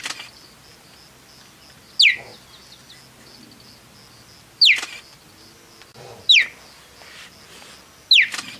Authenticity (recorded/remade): recorded